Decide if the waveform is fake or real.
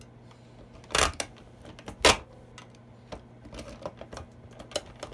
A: real